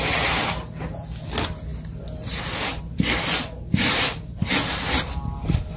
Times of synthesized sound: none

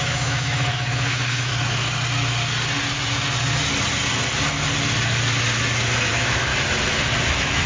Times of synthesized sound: 0.0-1.5; 6.1-6.5; 7.3-7.7

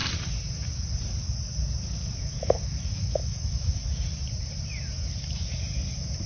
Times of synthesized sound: 2.2-3.8

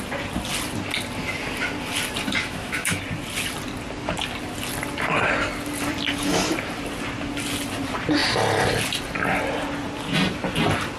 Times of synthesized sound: 2.4-3.0

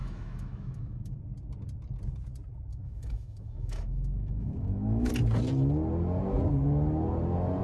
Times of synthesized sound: 0.0-1.2; 2.7-5.1